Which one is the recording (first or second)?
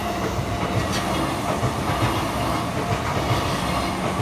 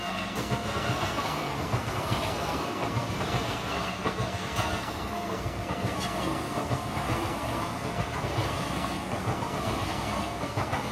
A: first